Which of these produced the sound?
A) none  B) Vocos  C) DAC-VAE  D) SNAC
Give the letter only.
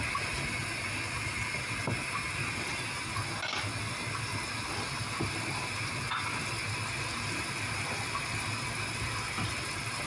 A